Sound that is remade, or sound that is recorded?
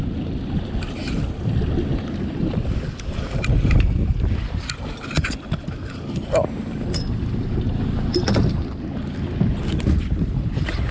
recorded